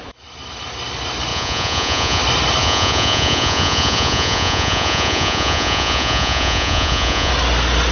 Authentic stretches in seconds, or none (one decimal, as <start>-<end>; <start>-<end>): 0.0-1.3; 2.2-2.6; 7.3-7.9